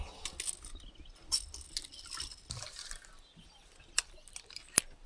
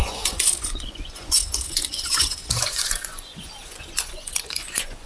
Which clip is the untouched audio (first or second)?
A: first